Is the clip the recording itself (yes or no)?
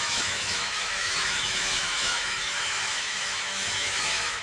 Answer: no